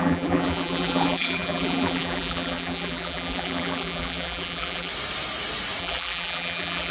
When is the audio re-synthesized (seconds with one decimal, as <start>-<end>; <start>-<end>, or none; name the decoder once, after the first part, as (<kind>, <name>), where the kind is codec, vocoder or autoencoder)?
0.0-4.9 (vocoder, BigVGAN v2); 5.8-6.9